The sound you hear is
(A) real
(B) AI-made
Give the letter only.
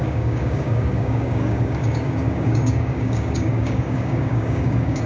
B